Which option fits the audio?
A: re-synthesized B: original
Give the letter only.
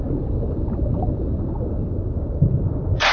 B